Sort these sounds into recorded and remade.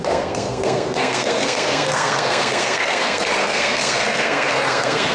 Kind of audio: remade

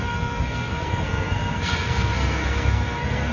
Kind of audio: remade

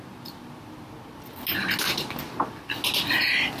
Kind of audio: recorded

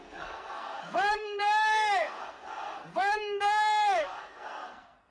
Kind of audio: remade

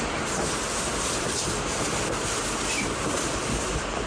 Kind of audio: recorded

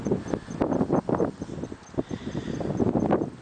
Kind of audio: recorded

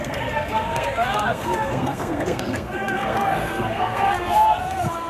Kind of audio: remade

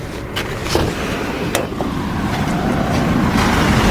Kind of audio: recorded